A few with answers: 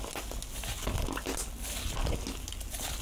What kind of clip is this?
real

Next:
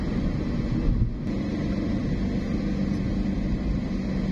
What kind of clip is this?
real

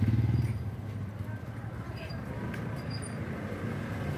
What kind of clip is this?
real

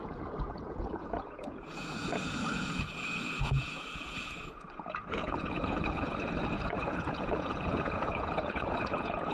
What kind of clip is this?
fake